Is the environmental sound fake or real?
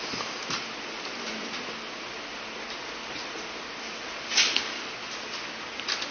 real